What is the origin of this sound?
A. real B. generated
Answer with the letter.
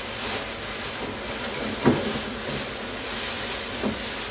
A